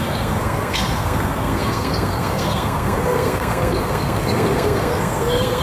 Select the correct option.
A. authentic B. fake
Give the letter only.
B